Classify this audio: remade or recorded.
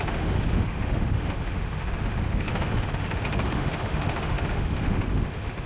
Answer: remade